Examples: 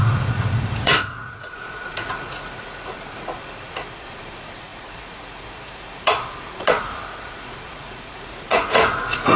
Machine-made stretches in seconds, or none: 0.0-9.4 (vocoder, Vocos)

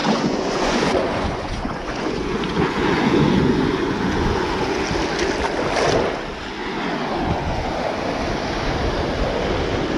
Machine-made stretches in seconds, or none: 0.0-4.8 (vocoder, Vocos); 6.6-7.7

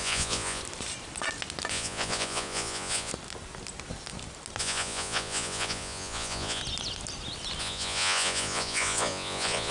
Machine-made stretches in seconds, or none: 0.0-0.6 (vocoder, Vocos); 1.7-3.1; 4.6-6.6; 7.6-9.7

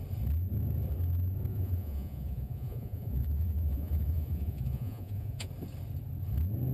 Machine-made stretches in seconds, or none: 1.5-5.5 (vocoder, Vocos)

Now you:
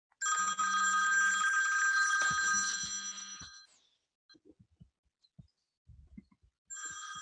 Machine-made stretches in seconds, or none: none

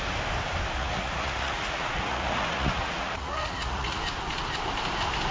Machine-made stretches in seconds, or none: 0.8-4.0 (vocoder, Vocos)

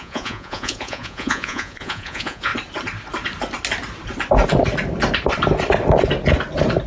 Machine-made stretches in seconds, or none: 0.0-2.5 (vocoder, Vocos)

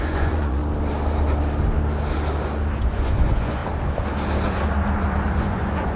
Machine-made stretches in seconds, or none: 0.0-0.6 (vocoder, Vocos); 2.8-3.6; 5.4-6.0